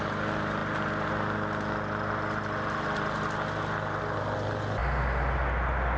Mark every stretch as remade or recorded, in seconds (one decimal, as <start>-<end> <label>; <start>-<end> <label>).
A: 0.0-6.0 recorded